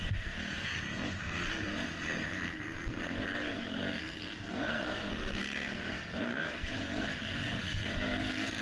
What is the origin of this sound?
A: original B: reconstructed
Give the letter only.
B